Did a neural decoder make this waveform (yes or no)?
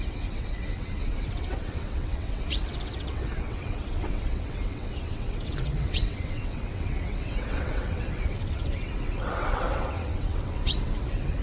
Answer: yes